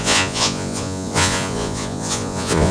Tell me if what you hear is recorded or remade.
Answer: remade